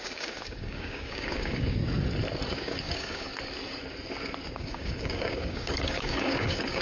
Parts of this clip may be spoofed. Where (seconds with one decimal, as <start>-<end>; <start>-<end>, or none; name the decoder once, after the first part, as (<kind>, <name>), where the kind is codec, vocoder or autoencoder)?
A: 0.0-1.8 (codec, DAC); 2.5-3.3; 4.5-6.8